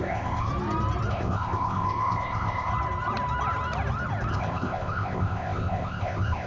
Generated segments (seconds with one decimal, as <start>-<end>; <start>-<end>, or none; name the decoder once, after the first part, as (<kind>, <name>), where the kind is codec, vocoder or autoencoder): 0.0-0.5 (codec, ZipCodec); 1.1-2.7; 4.3-6.5